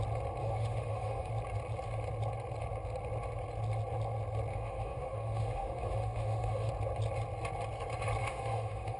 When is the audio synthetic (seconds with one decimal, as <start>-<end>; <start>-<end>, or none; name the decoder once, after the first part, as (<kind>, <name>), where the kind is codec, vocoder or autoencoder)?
0.4-1.3 (autoencoder, DAC-VAE); 4.5-6.7; 8.2-9.0

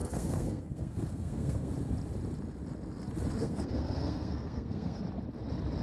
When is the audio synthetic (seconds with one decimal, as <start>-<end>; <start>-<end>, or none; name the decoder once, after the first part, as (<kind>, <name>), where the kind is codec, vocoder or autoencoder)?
0.0-1.7 (codec, SNAC); 3.4-5.0